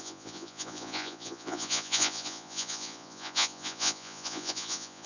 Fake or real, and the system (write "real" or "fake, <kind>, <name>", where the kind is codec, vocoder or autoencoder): fake, vocoder, Vocos